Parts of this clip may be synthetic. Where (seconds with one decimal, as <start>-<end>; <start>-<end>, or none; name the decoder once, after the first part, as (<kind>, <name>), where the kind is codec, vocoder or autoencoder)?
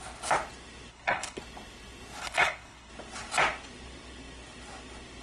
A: 0.9-1.4 (codec, HILCodec); 2.2-2.9